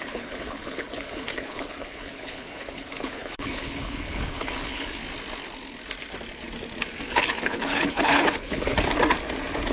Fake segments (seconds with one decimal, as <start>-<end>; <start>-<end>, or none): 0.0-5.0; 7.1-8.7